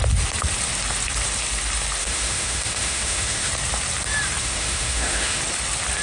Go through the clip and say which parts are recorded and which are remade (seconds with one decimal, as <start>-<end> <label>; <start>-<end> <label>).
0.0-2.0 recorded; 2.0-3.5 remade; 3.5-4.4 recorded; 4.4-5.4 remade; 5.4-6.0 recorded

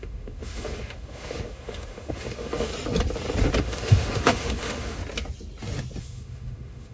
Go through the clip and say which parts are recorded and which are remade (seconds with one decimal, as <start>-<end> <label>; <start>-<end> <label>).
0.0-2.7 remade; 2.7-3.6 recorded; 3.6-5.0 remade; 5.0-6.0 recorded; 6.0-6.9 remade

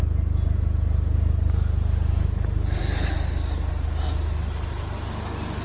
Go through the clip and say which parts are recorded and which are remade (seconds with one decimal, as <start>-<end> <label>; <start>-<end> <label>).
0.0-5.6 recorded